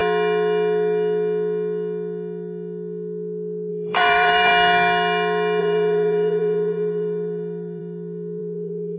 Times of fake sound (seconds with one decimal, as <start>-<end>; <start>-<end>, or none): 3.7-4.5; 5.6-9.0